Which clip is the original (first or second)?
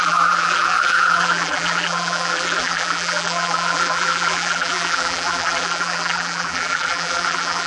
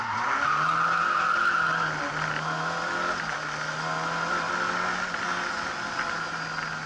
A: second